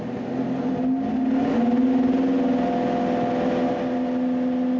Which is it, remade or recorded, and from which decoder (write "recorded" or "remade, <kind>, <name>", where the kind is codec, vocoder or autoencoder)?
recorded